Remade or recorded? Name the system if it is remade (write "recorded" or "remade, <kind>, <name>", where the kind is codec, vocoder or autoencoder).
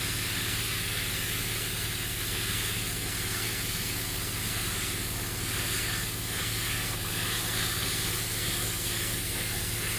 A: remade, codec, SNAC